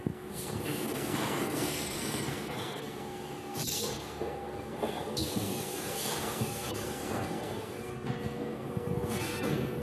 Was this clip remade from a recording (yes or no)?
yes